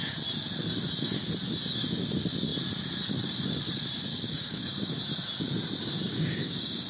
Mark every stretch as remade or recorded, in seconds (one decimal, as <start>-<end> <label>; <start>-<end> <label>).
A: 0.0-4.1 recorded; 4.1-5.0 remade; 5.0-6.1 recorded; 6.1-6.9 remade